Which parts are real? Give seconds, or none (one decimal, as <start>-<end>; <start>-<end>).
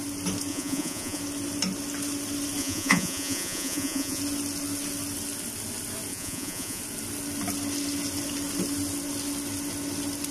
0.0-0.5; 1.2-2.6; 4.2-6.1; 6.8-10.3